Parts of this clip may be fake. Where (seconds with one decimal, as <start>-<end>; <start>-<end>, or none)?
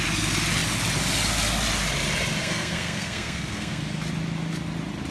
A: 2.4-3.8